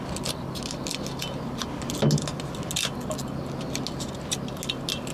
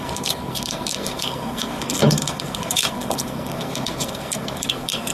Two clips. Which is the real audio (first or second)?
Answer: first